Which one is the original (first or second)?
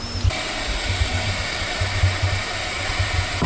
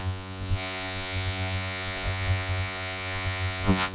first